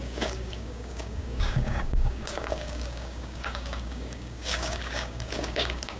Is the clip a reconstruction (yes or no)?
yes